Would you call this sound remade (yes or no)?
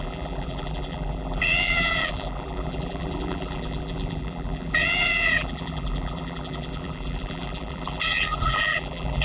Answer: yes